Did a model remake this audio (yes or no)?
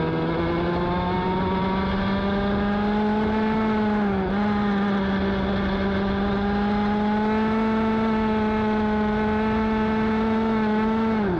no